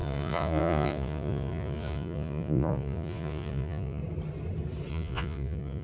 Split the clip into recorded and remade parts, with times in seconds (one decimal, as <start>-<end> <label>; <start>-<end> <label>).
0.0-4.0 remade; 4.0-4.9 recorded; 4.9-5.8 remade